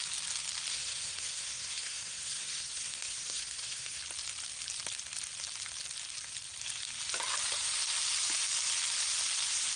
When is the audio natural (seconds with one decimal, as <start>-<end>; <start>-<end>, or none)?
0.0-0.7; 4.0-9.8